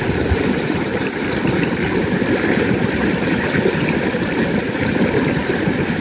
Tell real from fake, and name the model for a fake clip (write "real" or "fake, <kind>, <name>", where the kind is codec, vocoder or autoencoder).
real